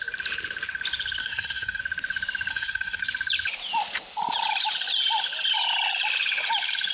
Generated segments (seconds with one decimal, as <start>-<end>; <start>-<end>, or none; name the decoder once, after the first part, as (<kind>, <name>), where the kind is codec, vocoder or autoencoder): 1.2-1.8 (codec, SNAC); 2.5-3.0